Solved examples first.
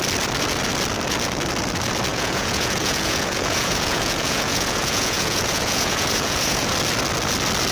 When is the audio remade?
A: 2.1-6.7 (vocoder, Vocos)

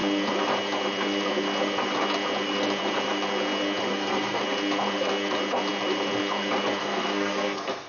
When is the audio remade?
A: 3.9-4.4 (codec, SNAC); 6.8-7.9

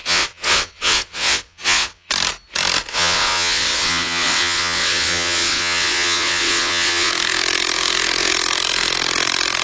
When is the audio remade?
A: 0.0-2.1 (vocoder, WaveNeXt); 2.9-7.1

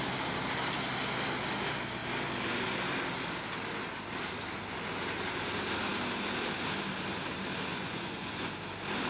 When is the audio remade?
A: 7.7-8.5 (vocoder, Vocos)